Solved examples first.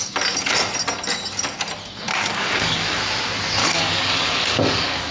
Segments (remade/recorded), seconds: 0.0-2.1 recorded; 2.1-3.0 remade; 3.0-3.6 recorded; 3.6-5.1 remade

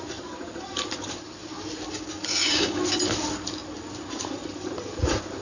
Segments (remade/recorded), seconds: 0.0-2.3 recorded; 2.3-2.8 remade; 2.8-5.4 recorded

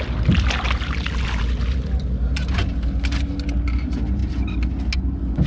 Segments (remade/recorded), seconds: 0.0-5.5 recorded

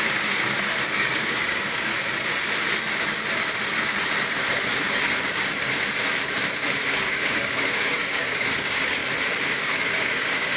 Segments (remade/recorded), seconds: 0.0-1.9 remade; 1.9-6.9 recorded; 6.9-9.0 remade; 9.0-9.6 recorded; 9.6-10.6 remade